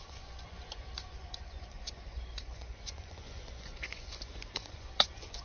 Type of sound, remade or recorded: remade